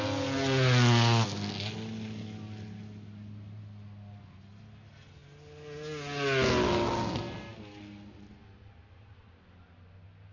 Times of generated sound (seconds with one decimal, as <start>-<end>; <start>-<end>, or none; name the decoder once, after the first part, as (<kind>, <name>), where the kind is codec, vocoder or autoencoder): none